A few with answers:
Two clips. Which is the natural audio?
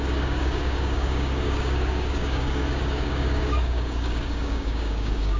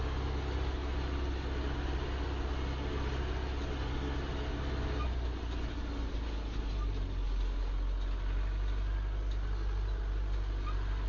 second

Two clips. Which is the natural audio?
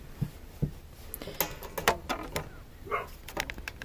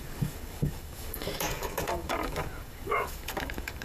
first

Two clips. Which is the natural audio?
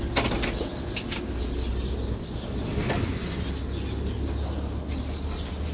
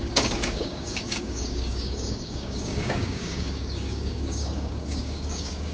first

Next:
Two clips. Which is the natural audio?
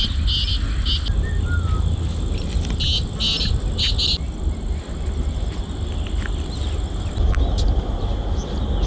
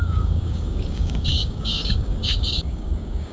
first